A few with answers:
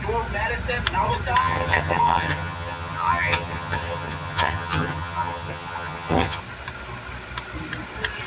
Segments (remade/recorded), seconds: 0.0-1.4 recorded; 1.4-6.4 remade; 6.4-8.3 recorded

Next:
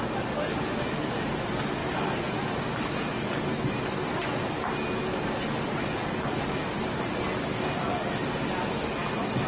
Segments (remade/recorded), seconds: 0.0-1.8 recorded; 1.8-2.6 remade; 2.6-6.0 recorded; 6.0-6.6 remade; 6.6-9.5 recorded

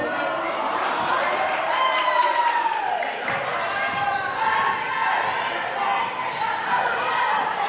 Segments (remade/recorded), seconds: 0.0-0.8 remade; 0.8-7.7 recorded

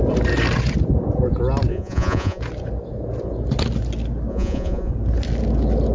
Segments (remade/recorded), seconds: 0.0-1.7 recorded; 1.7-2.4 remade; 2.4-4.3 recorded; 4.3-4.9 remade; 4.9-5.9 recorded

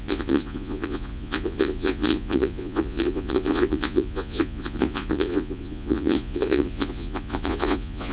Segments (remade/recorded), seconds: 0.0-8.1 remade

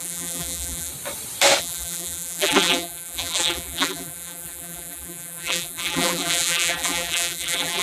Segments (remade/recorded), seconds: 0.0-0.9 remade; 0.9-1.6 recorded; 1.6-7.8 remade